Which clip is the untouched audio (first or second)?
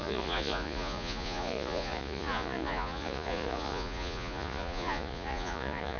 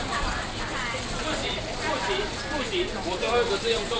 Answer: second